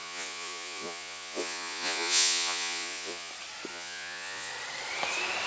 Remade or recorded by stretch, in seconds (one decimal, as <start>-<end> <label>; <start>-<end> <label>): 0.0-3.3 remade; 3.3-3.7 recorded; 3.7-4.5 remade; 4.5-5.5 recorded